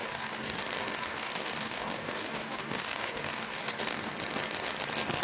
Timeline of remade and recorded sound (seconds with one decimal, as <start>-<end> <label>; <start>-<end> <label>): 0.0-0.6 remade; 0.6-1.1 recorded; 1.1-4.1 remade; 4.1-5.2 recorded